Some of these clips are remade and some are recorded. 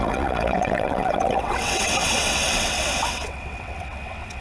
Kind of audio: remade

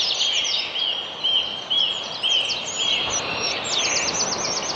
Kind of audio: recorded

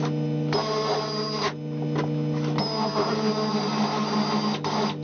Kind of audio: recorded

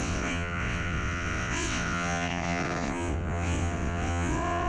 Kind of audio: remade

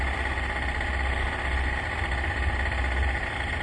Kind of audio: recorded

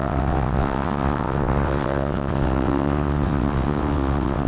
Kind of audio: remade